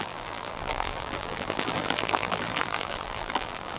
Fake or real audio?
fake